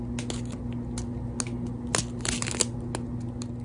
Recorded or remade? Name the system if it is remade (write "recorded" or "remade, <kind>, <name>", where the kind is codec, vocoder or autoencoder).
recorded